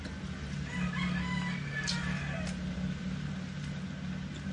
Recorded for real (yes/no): yes